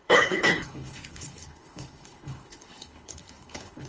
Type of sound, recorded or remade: remade